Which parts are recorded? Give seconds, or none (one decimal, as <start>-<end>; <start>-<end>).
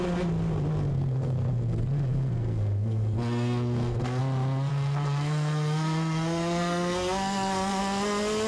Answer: 0.0-0.9; 4.2-4.7; 7.8-8.5